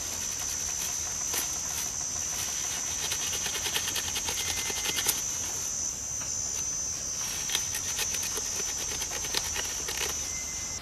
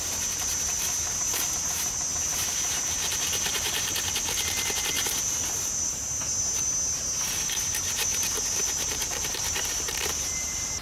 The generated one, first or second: second